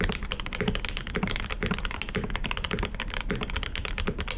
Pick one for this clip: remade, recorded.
remade